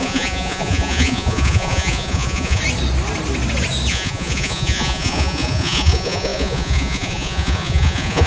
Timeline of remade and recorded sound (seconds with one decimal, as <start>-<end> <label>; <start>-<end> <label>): 0.0-2.6 remade; 2.6-3.9 recorded; 3.9-8.3 remade